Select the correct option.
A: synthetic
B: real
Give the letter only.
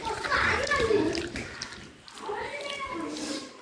B